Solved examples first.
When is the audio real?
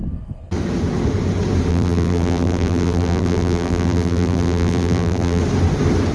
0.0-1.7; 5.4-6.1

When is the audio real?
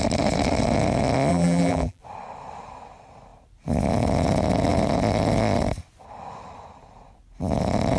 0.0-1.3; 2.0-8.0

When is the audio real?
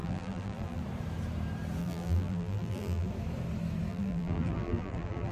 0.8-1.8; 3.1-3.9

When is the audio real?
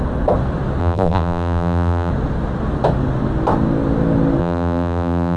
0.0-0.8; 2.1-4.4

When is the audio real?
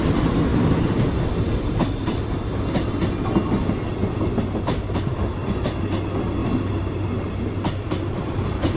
0.0-0.5; 1.2-6.4; 7.7-8.8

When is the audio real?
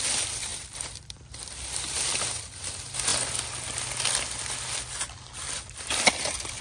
0.0-0.5; 1.3-6.6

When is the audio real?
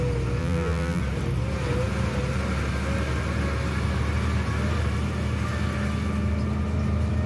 0.0-0.4; 1.0-7.3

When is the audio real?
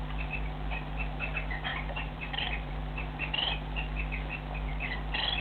0.0-1.7; 2.7-5.4